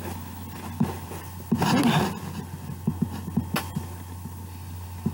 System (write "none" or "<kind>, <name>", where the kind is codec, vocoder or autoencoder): none